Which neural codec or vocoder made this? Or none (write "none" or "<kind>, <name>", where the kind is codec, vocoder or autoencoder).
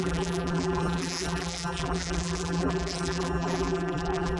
vocoder, BigVGAN v2